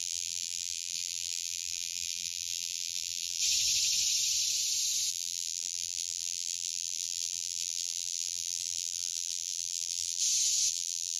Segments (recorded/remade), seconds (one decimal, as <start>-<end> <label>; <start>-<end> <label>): 0.0-3.4 remade; 3.4-5.1 recorded; 5.1-10.2 remade; 10.2-10.7 recorded; 10.7-11.2 remade